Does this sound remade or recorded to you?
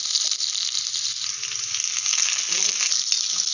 recorded